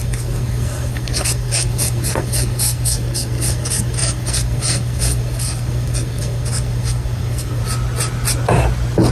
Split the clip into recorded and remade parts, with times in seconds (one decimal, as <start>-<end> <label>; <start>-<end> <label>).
0.0-7.6 remade; 7.6-9.1 recorded